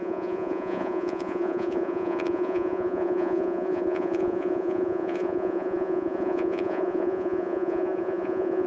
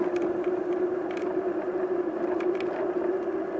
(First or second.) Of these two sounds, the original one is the second